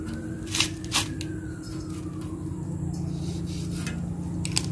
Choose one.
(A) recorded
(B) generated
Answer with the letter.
A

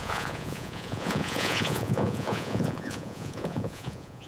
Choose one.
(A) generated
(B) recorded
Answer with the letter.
A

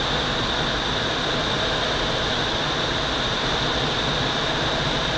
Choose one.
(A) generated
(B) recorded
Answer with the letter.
B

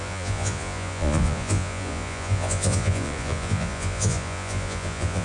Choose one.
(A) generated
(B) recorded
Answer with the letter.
A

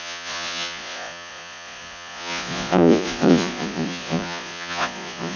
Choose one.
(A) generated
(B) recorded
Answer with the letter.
A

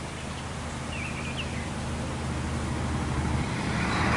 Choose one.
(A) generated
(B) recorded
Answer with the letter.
B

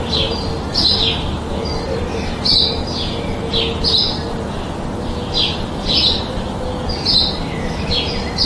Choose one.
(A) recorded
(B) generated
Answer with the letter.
A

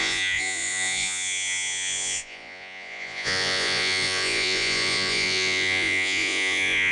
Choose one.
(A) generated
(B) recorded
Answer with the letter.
A